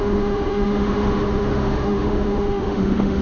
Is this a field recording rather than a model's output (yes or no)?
no